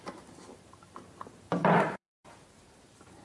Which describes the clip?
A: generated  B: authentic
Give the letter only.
A